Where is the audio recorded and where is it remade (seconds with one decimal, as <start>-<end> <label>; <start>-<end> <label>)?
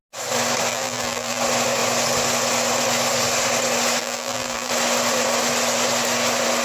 0.0-0.7 recorded; 0.7-1.4 remade; 1.4-4.0 recorded; 4.0-4.7 remade; 4.7-6.6 recorded